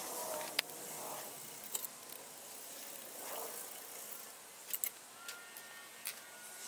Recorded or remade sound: recorded